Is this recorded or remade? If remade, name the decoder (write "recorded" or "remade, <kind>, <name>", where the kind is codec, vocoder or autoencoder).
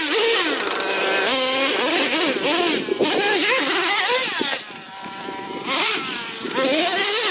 recorded